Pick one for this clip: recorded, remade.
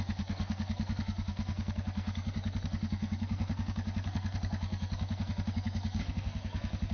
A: remade